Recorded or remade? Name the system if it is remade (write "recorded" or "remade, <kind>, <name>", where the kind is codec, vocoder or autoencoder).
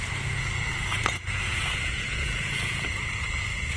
remade, vocoder, Vocos